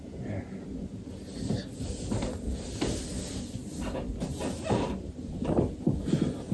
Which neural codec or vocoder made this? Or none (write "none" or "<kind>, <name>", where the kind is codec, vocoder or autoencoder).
none